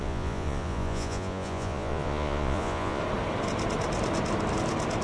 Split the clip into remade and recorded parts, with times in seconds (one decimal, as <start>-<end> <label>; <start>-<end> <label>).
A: 0.0-3.0 remade; 3.0-5.0 recorded